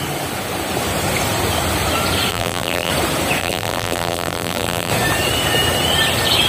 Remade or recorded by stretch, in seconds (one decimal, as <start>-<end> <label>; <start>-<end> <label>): 0.0-2.3 recorded; 2.3-2.9 remade; 2.9-3.4 recorded; 3.4-4.9 remade; 4.9-6.5 recorded